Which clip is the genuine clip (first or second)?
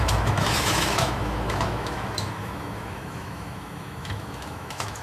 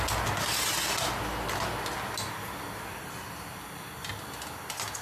second